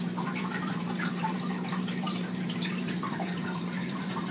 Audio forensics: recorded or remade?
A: remade